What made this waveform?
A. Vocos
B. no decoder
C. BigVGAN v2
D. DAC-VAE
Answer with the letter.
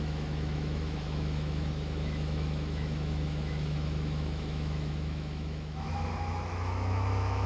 D